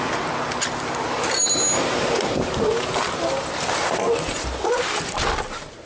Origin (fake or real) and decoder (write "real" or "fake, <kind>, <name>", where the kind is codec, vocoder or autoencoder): real